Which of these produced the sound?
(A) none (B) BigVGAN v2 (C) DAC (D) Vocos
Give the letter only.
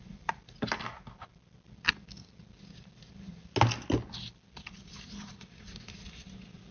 A